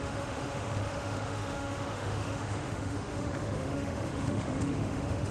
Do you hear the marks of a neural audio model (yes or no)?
yes